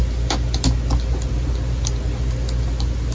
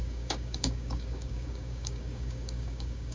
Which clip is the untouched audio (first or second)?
first